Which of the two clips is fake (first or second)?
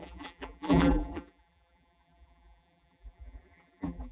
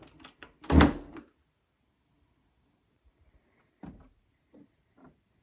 first